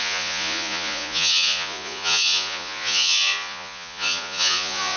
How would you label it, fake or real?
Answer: fake